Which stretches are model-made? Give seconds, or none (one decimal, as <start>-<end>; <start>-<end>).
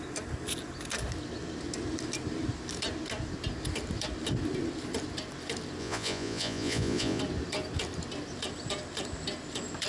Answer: 5.8-7.2